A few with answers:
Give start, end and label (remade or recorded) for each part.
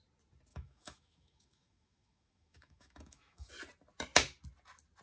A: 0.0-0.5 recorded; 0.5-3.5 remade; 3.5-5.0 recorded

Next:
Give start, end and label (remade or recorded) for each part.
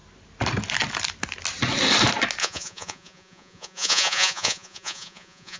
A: 0.0-2.4 recorded; 2.4-5.6 remade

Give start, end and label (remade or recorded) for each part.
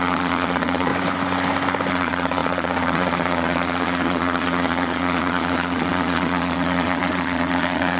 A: 0.0-0.9 remade; 0.9-1.9 recorded; 1.9-8.0 remade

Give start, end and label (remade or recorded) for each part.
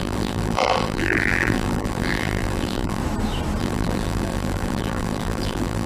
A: 0.0-3.0 remade; 3.0-3.6 recorded; 3.6-5.9 remade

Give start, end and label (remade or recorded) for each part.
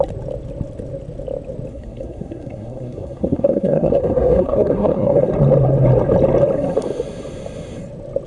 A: 0.0-1.7 recorded; 1.7-5.3 remade; 5.3-8.3 recorded